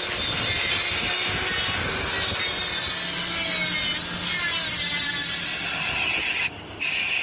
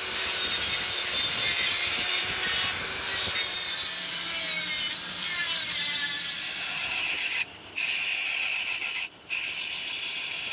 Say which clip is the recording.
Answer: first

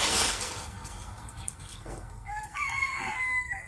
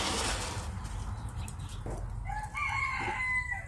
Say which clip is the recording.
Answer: second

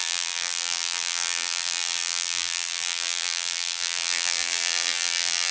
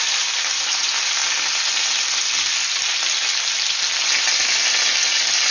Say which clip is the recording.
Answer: second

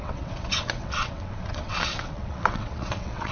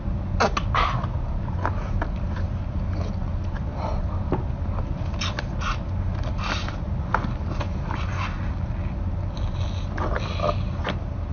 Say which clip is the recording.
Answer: second